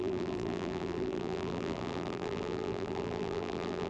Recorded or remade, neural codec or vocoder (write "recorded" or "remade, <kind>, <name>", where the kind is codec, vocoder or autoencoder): remade, vocoder, BigVGAN v2